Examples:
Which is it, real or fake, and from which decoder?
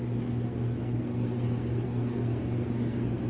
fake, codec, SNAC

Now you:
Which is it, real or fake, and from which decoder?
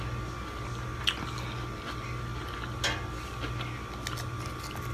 real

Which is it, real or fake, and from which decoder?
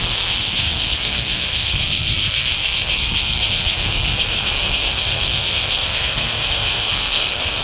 fake, codec, SNAC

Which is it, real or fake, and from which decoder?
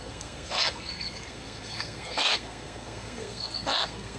fake, codec, SNAC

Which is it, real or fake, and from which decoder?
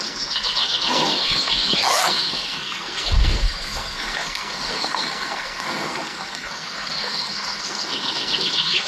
fake, codec, SNAC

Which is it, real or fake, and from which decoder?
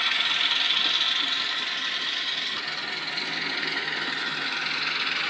real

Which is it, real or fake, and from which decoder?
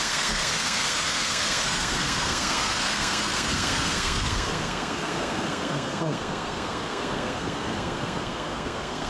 fake, codec, SNAC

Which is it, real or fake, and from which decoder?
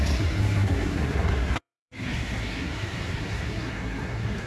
fake, codec, SNAC